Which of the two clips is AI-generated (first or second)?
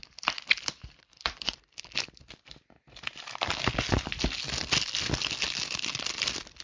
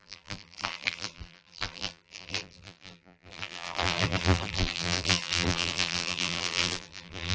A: second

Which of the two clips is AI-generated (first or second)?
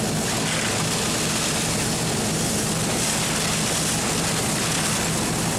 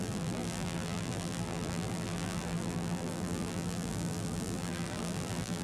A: second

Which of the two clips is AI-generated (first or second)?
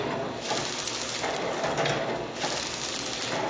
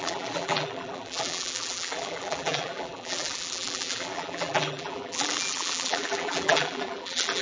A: second